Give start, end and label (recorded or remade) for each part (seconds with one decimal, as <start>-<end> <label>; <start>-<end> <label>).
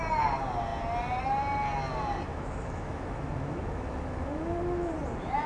0.0-2.3 recorded; 2.3-4.9 remade; 4.9-5.5 recorded